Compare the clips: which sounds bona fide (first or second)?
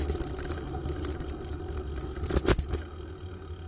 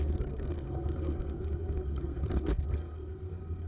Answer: first